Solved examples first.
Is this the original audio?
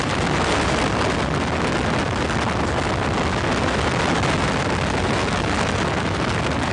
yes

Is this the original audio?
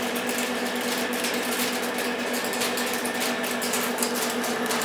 yes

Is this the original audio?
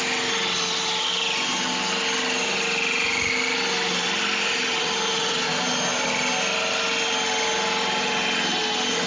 yes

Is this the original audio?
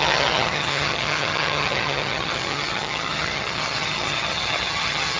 no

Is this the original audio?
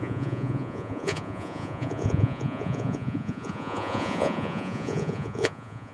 no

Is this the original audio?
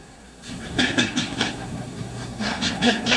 no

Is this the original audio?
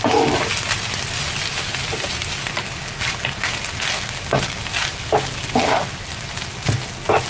yes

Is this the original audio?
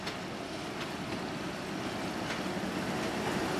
yes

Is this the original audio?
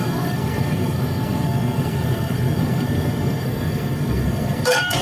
no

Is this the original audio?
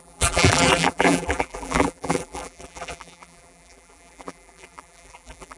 no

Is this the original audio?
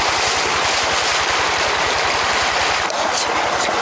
yes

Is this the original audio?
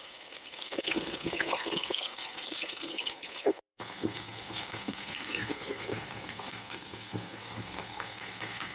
no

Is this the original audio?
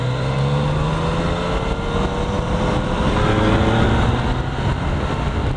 yes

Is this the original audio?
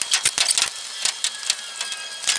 yes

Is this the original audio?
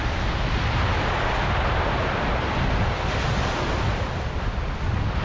yes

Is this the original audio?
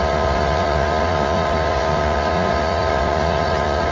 no